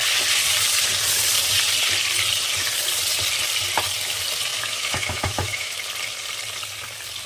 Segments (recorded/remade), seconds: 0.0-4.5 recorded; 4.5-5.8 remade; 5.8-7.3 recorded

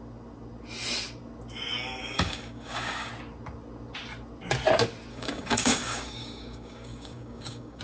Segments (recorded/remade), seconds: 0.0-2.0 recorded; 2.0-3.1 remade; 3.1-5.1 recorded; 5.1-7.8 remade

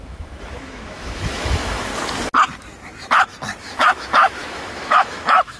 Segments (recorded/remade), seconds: 0.0-1.9 remade; 1.9-3.6 recorded; 3.6-5.6 remade

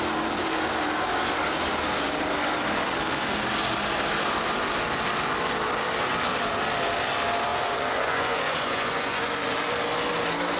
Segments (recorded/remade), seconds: 0.0-7.5 recorded; 7.5-9.3 remade; 9.3-10.6 recorded

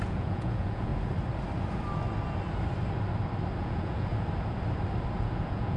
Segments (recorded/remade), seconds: 0.0-0.9 remade; 0.9-3.6 recorded; 3.6-4.1 remade; 4.1-5.2 recorded; 5.2-5.8 remade